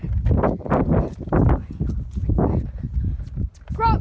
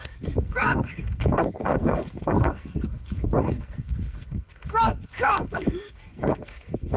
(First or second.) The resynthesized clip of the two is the second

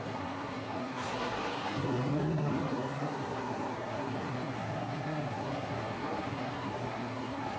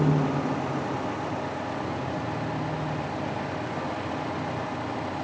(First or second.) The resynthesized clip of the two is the first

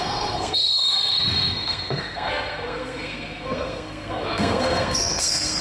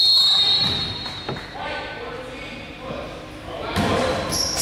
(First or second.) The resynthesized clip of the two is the first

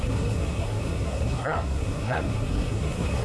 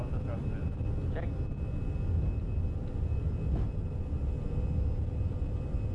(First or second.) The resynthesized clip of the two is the first